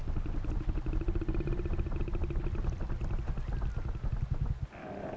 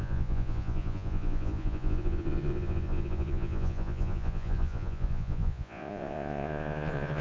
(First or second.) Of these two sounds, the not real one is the second